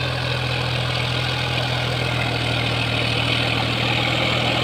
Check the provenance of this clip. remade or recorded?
recorded